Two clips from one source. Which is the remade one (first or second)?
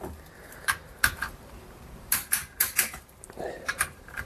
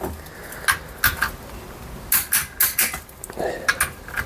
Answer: first